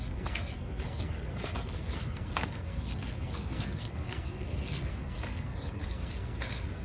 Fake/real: fake